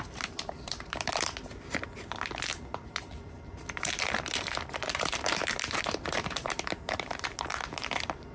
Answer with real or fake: fake